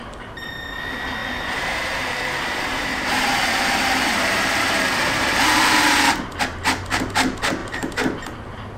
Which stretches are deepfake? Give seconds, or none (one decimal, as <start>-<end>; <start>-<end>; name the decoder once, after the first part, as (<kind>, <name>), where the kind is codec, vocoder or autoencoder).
1.2-5.6 (vocoder, BigVGAN v2); 7.6-8.2